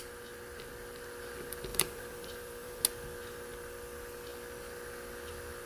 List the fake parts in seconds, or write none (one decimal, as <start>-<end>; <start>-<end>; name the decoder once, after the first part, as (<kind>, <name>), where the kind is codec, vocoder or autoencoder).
1.7-2.8 (vocoder, BigVGAN v2)